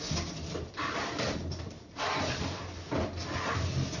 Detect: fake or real real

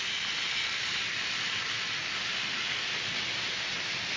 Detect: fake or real real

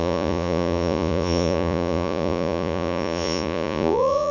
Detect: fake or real fake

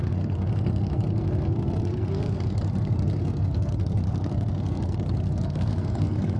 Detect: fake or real fake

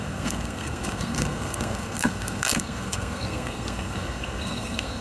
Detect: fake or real fake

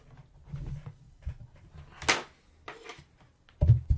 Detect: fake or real real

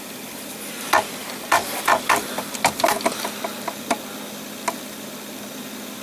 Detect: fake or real real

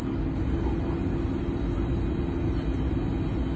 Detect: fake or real real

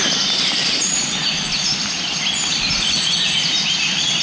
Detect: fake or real real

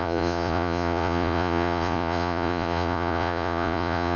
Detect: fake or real fake